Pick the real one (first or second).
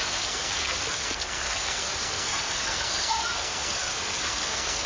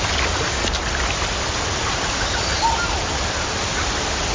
second